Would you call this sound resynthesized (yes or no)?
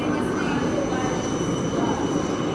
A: no